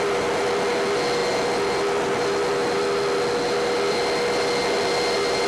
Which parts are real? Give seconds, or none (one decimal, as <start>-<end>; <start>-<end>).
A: 0.0-5.5